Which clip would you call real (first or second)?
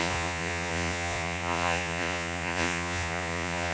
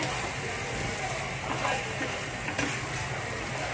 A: second